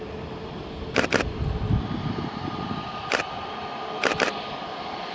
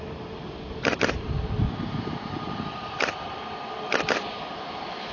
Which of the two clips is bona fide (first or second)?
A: first